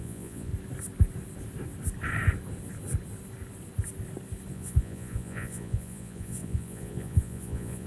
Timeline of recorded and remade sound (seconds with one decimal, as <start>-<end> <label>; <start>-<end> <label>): 0.0-0.5 remade; 0.5-4.5 recorded; 4.5-7.9 remade